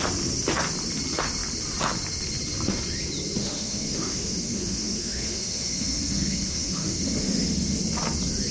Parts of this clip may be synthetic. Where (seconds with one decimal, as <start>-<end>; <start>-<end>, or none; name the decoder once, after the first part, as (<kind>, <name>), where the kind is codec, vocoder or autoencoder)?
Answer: 3.4-7.8 (autoencoder, DAC-VAE)